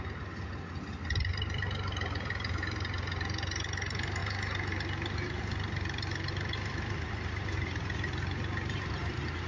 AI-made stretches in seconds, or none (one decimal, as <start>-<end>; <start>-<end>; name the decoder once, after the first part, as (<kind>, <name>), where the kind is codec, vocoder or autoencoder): none